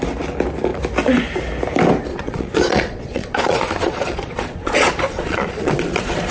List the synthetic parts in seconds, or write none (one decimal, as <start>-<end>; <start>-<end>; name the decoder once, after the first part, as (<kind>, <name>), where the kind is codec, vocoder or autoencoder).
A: 2.1-6.3 (vocoder, Vocos)